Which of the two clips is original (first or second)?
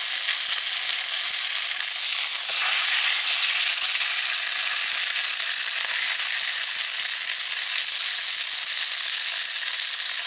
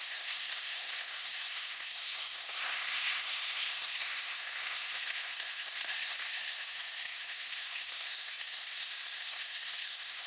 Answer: first